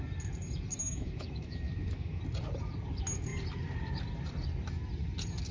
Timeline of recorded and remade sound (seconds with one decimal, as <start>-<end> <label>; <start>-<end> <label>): 0.0-0.8 recorded; 0.8-2.2 remade; 2.2-5.5 recorded